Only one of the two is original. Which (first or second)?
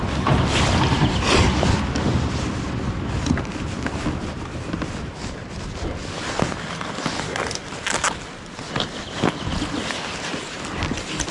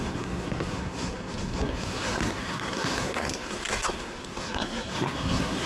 first